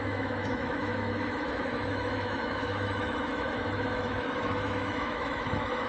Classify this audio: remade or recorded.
remade